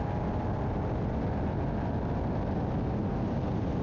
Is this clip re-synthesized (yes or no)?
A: no